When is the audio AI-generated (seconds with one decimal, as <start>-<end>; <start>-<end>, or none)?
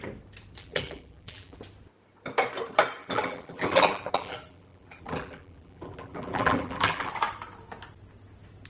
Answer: 0.6-1.6; 3.0-7.1